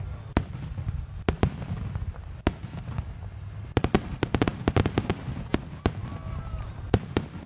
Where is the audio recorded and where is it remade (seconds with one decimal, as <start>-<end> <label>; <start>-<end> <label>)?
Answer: 0.0-7.5 recorded